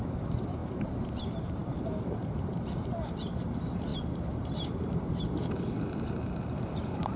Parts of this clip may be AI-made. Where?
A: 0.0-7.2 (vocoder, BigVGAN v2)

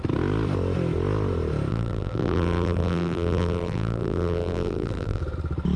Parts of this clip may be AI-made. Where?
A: 1.7-5.2 (vocoder, BigVGAN v2)

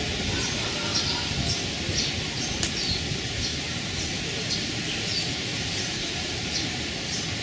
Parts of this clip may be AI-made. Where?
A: 3.5-4.5 (vocoder, BigVGAN v2); 5.5-6.9

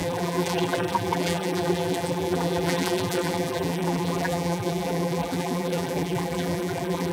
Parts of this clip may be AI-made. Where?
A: 0.0-7.1 (vocoder, BigVGAN v2)

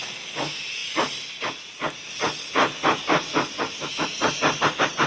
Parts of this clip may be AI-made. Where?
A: none